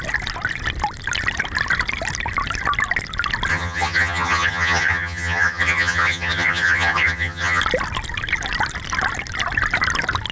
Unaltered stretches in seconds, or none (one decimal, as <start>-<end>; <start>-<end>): 0.0-3.5; 7.6-10.3